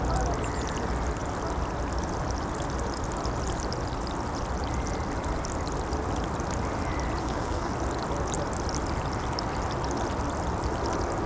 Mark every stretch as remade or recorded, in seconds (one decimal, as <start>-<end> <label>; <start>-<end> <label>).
0.0-7.2 recorded; 7.2-7.7 remade; 7.7-11.3 recorded